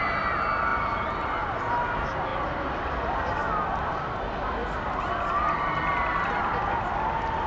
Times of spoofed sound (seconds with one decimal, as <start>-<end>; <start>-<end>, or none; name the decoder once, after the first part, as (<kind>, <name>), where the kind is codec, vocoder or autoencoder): none